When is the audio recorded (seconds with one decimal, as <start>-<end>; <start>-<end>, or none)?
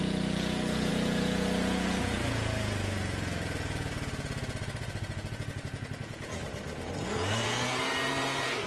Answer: 6.4-7.0